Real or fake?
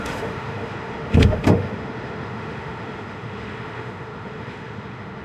fake